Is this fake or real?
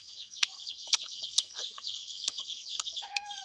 fake